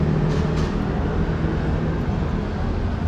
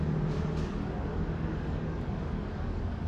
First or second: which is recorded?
first